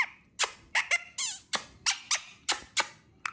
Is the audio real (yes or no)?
yes